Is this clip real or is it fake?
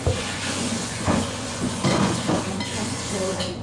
fake